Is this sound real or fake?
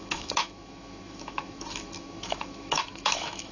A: fake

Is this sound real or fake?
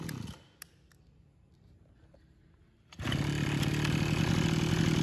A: real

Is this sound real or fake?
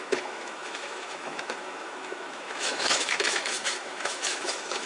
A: fake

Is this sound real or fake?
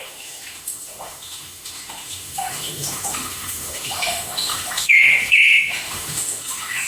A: fake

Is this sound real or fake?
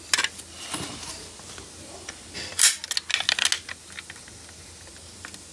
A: real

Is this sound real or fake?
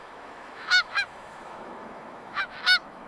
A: fake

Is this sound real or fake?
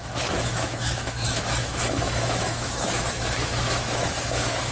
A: fake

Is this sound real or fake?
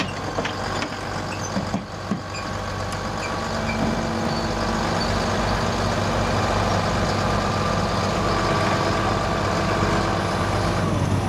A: real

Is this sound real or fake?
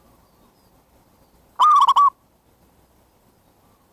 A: real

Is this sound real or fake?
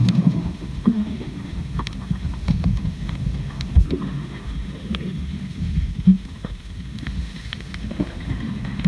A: fake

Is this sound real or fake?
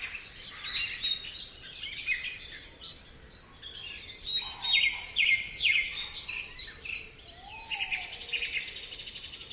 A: real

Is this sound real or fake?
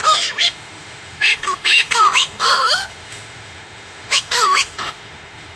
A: fake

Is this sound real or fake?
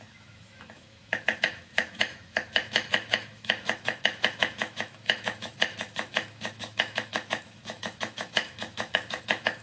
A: fake